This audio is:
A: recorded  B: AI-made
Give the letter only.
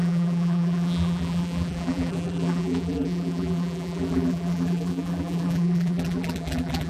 B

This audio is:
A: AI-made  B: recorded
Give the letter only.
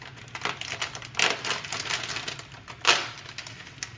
B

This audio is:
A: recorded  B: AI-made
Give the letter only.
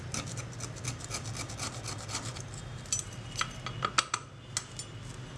A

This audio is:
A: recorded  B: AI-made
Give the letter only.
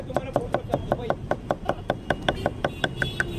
B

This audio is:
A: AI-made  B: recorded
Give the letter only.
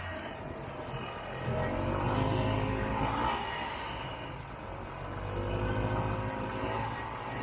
B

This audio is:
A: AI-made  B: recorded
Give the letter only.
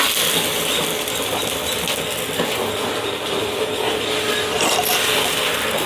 B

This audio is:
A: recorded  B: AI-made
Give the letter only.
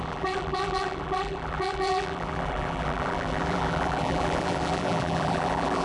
B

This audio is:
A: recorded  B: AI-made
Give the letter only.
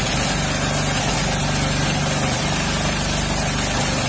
A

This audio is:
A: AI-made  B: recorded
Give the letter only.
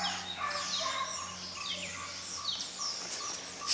B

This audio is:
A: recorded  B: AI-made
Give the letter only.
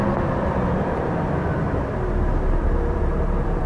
B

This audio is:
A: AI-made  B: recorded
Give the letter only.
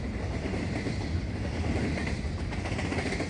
B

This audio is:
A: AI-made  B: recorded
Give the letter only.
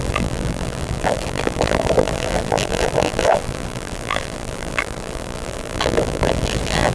A